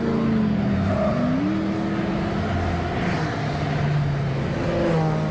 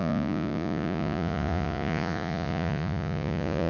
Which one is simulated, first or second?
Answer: second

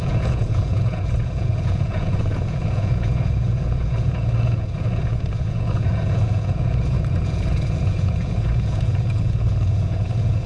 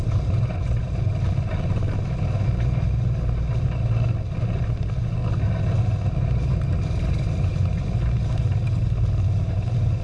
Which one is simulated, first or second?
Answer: first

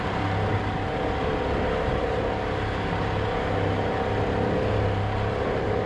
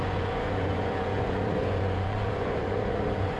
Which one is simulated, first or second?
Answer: second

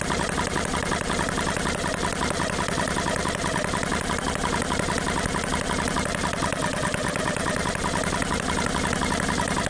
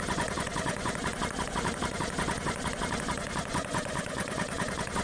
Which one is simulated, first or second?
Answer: second